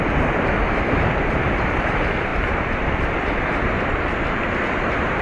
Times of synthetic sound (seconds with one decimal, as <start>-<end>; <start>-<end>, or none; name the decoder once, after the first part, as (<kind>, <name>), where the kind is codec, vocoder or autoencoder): 2.3-3.4 (vocoder, BigVGAN v2)